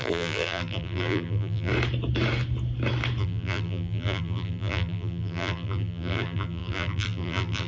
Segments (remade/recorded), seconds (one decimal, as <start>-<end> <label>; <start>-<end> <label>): 0.0-1.7 remade; 1.7-3.2 recorded; 3.2-7.7 remade

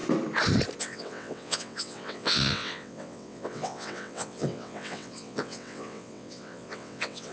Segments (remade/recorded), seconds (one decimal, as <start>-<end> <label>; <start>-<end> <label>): 0.0-0.8 recorded; 0.8-7.3 remade

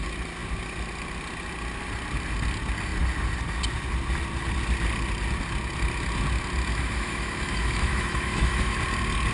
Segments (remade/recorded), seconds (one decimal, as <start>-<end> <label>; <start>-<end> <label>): 0.0-6.7 recorded; 6.7-8.8 remade; 8.8-9.3 recorded

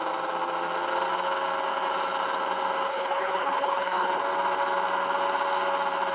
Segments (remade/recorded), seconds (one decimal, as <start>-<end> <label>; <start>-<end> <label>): 0.0-2.9 recorded; 2.9-4.2 remade; 4.2-6.1 recorded